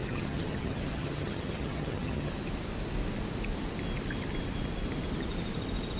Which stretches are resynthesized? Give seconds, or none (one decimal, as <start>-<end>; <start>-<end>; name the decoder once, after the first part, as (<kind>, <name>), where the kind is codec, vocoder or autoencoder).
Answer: 0.0-2.3 (vocoder, HiFi-GAN)